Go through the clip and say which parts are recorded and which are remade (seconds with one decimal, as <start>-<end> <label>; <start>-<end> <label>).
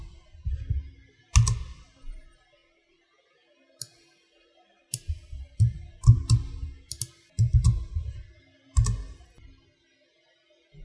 0.0-10.8 recorded